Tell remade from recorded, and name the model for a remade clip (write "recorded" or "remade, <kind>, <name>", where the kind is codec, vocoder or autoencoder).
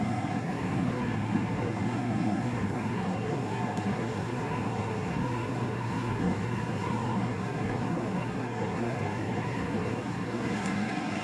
remade, codec, SNAC